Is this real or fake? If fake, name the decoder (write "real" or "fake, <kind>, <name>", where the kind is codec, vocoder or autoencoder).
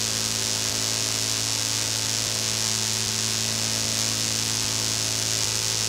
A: real